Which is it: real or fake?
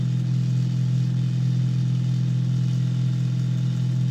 real